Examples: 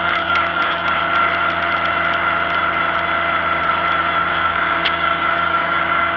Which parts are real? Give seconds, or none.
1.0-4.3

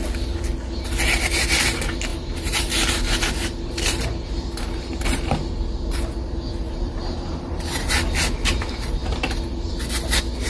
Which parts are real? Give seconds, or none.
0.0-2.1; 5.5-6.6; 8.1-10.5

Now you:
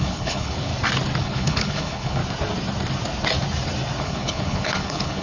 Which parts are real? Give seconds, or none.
0.7-1.2; 2.2-4.0

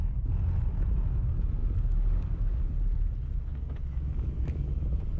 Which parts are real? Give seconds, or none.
0.0-1.6; 2.6-3.5; 4.7-5.2

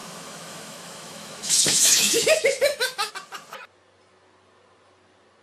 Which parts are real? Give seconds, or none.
3.1-5.4

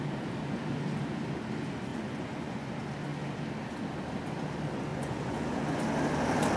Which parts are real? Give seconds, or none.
0.0-1.9; 2.7-4.9; 5.8-6.6

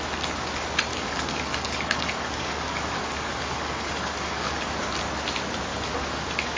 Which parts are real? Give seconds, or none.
0.0-0.9; 4.9-5.7